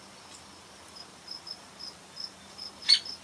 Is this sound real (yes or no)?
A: yes